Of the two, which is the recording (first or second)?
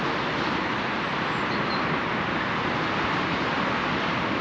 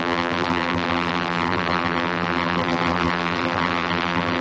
first